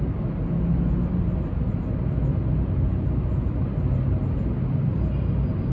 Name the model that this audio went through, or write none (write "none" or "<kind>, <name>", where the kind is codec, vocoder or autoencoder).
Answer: none